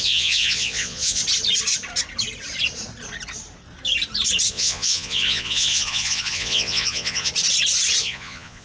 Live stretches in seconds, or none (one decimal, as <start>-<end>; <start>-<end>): 1.2-4.5; 7.3-8.0